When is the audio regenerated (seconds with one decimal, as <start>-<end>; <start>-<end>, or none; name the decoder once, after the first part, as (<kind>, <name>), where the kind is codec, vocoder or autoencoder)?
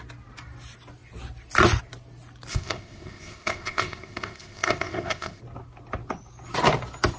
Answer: 2.5-5.4 (codec, ZipCodec)